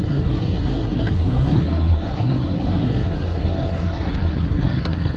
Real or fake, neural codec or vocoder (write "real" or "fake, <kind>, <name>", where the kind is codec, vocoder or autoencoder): fake, codec, SNAC